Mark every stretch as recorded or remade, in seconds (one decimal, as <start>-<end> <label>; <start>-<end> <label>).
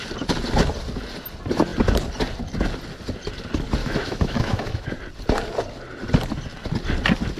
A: 0.0-3.8 recorded; 3.8-4.9 remade; 4.9-7.4 recorded